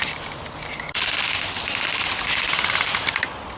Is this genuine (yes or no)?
yes